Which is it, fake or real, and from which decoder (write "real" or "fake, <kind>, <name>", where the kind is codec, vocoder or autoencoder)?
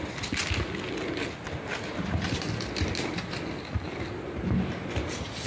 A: real